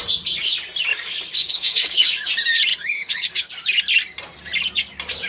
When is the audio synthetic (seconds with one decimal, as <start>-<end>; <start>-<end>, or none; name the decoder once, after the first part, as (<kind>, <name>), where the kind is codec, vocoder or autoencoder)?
0.9-2.3 (codec, DAC); 2.7-3.5